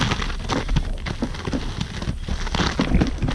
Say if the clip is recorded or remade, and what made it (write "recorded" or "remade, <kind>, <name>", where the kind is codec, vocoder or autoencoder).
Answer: recorded